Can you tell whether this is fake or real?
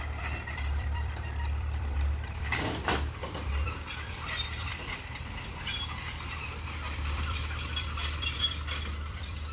fake